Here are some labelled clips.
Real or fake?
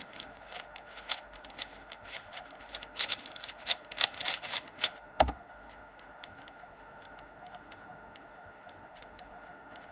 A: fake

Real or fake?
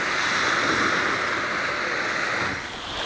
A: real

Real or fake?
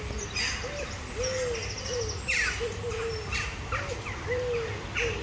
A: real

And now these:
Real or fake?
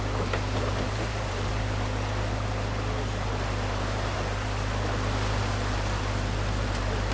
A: real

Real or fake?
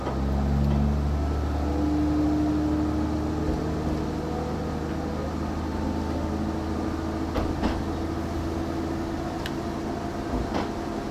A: real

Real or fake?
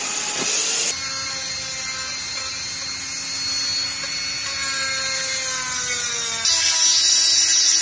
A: real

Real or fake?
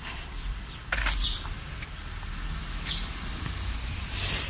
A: real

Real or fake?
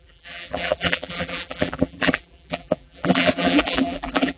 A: fake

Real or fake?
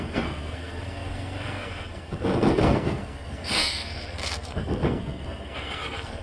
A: fake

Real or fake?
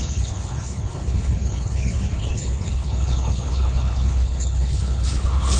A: fake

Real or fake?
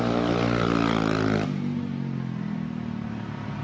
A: real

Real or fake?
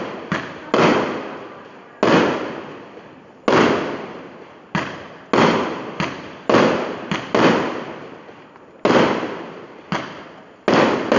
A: real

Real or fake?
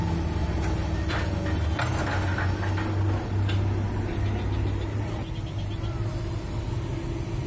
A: real